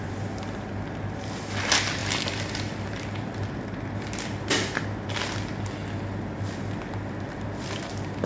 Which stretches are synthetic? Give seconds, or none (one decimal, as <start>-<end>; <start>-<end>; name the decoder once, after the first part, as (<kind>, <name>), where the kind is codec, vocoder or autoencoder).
none